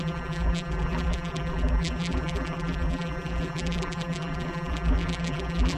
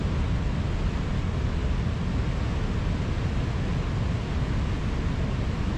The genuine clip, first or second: second